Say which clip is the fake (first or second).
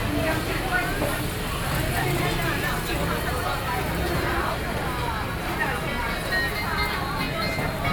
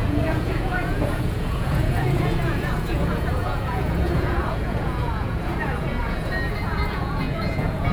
second